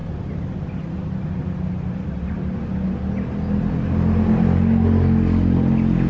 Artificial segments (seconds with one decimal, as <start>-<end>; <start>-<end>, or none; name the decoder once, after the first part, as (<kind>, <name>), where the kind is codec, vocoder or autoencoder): none